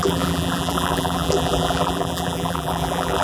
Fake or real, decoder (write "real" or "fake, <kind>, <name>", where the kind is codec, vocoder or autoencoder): fake, vocoder, BigVGAN v2